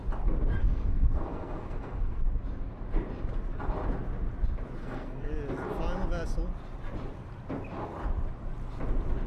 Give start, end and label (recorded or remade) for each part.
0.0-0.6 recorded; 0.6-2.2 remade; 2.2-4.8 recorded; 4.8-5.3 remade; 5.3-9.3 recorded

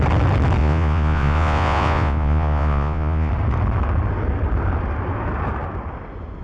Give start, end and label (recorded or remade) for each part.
0.0-0.6 recorded; 0.6-3.3 remade; 3.3-6.4 recorded